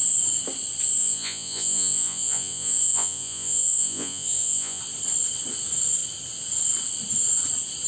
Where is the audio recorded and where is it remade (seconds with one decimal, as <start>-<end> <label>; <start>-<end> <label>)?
0.0-1.0 recorded; 1.0-4.8 remade; 4.8-7.9 recorded